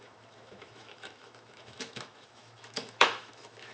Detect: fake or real fake